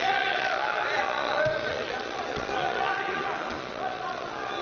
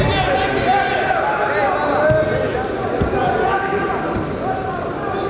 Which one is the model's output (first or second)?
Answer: first